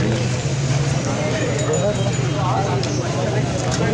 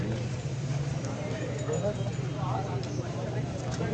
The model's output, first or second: second